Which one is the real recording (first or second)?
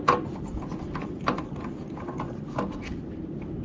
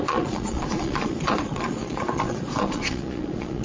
first